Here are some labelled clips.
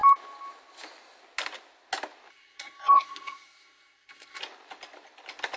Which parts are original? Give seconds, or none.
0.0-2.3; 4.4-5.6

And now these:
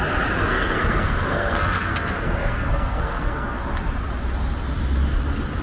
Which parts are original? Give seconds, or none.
0.0-0.4; 3.6-5.6

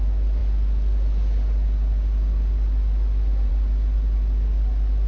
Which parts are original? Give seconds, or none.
0.0-5.1